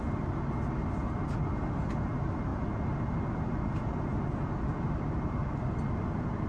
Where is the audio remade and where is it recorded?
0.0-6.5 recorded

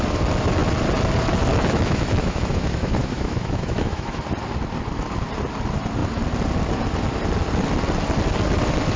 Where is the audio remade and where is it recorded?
0.0-1.5 recorded; 1.5-4.2 remade; 4.2-9.0 recorded

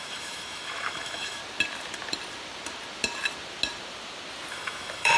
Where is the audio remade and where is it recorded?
0.0-1.4 remade; 1.4-4.5 recorded; 4.5-5.2 remade

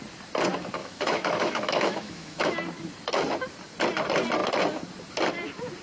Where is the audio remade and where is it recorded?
0.0-0.8 recorded; 0.8-2.4 remade; 2.4-5.8 recorded